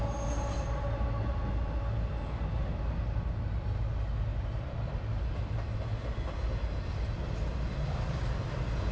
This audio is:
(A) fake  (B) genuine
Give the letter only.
B